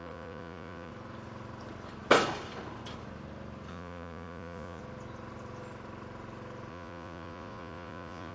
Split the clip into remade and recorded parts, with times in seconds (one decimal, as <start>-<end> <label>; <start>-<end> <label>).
0.0-0.9 remade; 0.9-3.7 recorded; 3.7-4.8 remade; 4.8-6.7 recorded; 6.7-8.3 remade